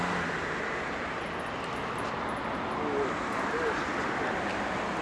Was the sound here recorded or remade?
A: recorded